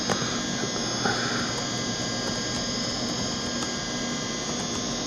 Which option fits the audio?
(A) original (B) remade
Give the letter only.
A